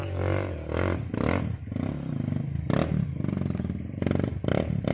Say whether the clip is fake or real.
real